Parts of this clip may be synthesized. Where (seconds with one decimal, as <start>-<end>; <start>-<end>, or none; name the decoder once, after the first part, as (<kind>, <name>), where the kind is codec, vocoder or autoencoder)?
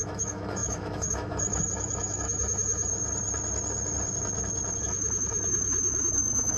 0.0-2.9 (autoencoder, DAC-VAE); 4.8-6.6